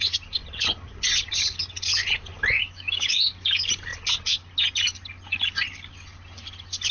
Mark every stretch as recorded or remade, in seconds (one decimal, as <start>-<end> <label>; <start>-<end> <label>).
0.0-2.6 recorded; 2.6-3.3 remade; 3.3-6.9 recorded